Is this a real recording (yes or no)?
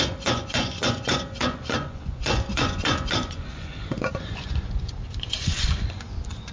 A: no